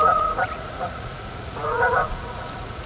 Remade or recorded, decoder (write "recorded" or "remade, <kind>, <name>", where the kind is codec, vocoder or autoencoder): remade, vocoder, Vocos